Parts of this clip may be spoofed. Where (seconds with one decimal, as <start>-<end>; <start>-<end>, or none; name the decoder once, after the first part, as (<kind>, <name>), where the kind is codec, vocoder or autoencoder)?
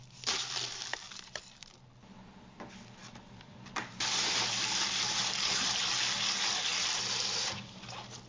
3.0-5.2 (vocoder, BigVGAN v2)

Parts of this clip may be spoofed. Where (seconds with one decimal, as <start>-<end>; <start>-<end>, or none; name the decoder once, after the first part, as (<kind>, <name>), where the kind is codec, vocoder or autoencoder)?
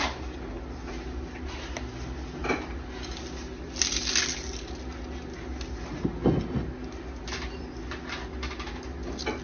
none